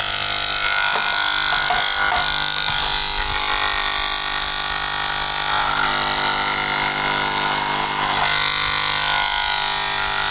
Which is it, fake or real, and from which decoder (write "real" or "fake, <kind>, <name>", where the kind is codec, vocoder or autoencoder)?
real